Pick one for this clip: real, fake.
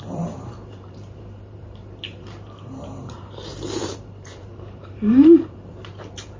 fake